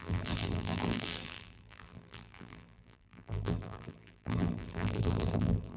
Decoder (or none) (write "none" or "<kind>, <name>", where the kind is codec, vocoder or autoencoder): vocoder, BigVGAN v2